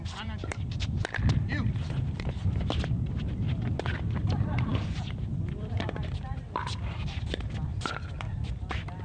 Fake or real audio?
fake